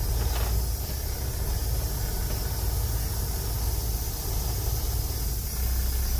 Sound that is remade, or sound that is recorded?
recorded